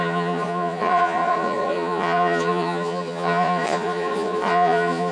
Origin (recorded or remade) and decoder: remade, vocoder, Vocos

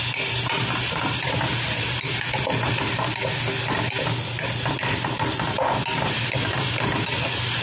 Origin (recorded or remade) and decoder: recorded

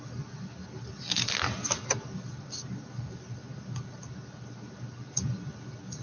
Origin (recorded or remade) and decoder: recorded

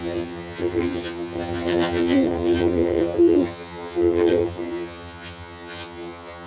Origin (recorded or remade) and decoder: remade, vocoder, HiFi-GAN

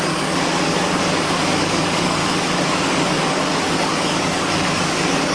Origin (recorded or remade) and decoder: remade, codec, DAC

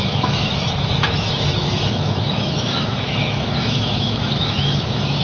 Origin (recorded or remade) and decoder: remade, autoencoder, DAC-VAE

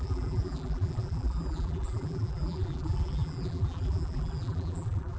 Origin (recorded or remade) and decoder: remade, vocoder, BigVGAN v2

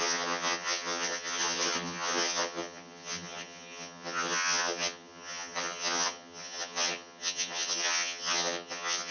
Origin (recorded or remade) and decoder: remade, vocoder, HiFi-GAN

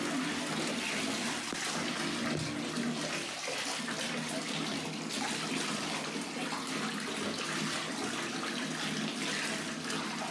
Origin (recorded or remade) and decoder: recorded